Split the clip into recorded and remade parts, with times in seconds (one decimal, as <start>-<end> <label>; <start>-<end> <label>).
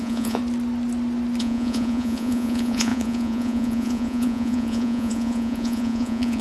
0.0-0.4 remade; 0.4-1.4 recorded; 1.4-6.4 remade